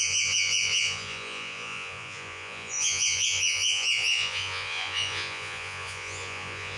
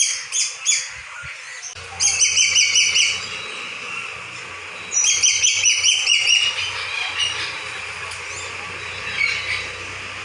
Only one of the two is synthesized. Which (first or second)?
first